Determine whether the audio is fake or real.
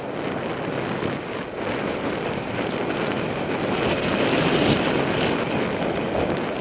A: real